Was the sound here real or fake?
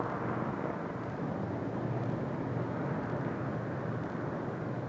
real